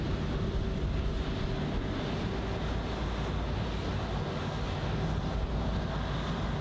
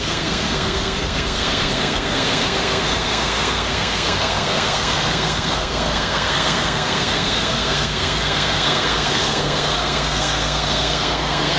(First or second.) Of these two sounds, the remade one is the second